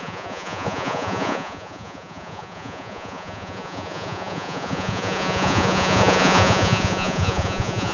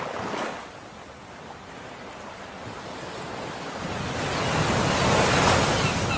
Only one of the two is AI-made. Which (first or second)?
first